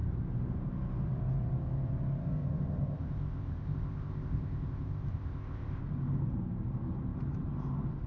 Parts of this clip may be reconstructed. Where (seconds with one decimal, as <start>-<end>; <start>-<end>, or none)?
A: 2.2-5.8